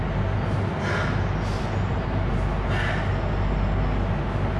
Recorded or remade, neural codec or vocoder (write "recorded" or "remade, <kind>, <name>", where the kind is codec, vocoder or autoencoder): recorded